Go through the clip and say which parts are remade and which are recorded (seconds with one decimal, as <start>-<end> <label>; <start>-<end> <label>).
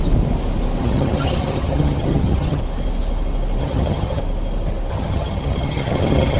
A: 0.0-0.8 recorded; 0.8-2.6 remade; 2.6-3.6 recorded; 3.6-4.2 remade; 4.2-4.9 recorded; 4.9-6.4 remade